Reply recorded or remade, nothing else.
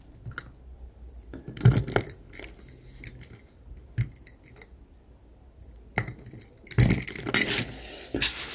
recorded